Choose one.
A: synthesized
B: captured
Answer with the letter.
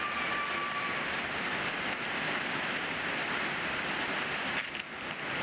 A